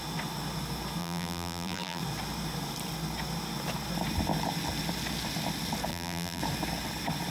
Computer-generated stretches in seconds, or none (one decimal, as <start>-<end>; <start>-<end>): 1.0-2.0; 5.9-6.4